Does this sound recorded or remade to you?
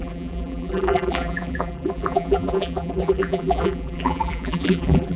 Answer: remade